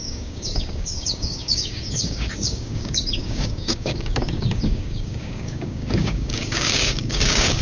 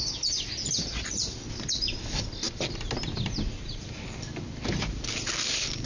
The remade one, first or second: first